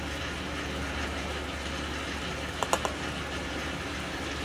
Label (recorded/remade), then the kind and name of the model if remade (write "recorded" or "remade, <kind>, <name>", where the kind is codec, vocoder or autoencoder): recorded